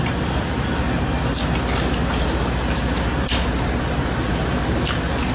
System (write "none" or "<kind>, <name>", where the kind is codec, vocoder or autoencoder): none